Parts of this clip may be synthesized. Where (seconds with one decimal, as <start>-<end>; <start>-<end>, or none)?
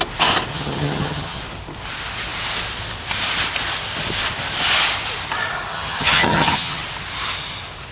0.5-1.4; 5.7-6.8